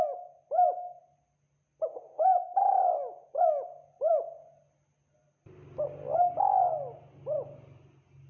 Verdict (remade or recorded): recorded